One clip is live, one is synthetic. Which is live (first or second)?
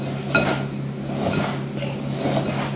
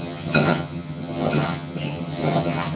first